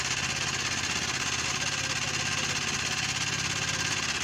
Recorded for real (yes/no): yes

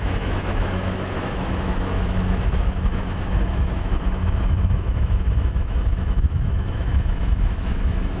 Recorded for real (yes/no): no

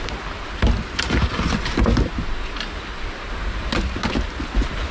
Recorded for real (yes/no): yes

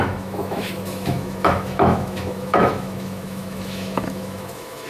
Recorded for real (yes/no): no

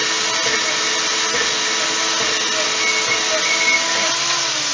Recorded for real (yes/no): yes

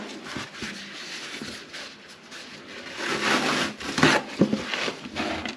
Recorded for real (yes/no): yes